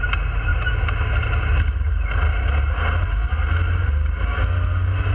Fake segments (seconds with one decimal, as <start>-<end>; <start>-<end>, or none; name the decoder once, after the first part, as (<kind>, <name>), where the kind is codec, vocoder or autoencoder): none